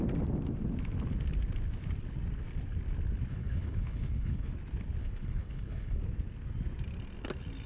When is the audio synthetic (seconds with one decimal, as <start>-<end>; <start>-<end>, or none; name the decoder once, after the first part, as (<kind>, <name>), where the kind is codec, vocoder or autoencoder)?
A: 3.3-4.5 (codec, HILCodec); 5.0-6.0